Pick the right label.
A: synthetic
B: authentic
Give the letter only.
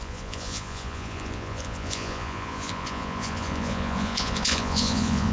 A